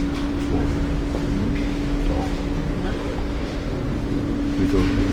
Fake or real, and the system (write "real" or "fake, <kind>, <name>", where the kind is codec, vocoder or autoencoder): real